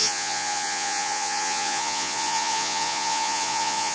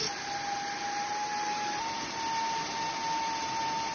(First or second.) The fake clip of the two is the first